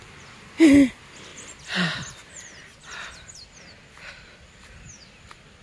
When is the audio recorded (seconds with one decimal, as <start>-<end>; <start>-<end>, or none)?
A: 0.0-5.6